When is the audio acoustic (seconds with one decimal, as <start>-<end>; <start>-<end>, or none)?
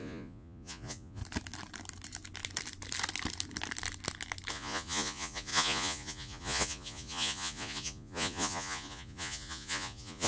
1.2-4.5